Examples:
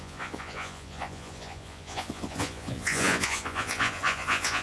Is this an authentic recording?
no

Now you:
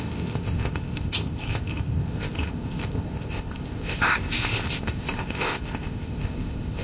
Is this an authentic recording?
no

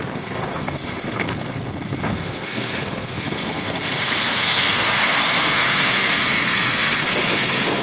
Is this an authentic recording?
no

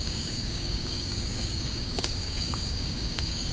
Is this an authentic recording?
no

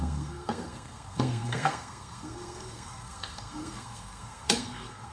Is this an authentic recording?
no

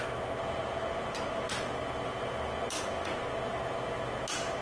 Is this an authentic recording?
yes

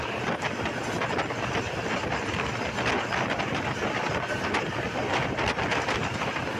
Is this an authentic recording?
yes